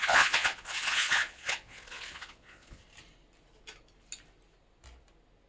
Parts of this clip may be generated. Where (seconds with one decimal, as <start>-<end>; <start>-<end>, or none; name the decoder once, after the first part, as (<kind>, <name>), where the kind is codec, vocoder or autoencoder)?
0.0-2.8 (vocoder, Vocos)